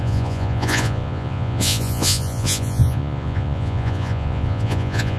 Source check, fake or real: fake